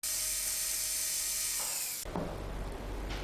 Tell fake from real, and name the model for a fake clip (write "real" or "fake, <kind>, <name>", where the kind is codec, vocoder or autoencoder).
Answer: real